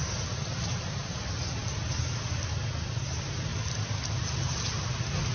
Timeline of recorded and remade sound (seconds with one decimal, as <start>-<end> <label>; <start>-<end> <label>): 0.0-5.3 recorded